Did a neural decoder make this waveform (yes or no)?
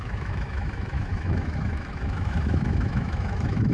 yes